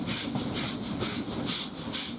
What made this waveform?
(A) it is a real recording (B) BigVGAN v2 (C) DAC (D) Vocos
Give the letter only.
A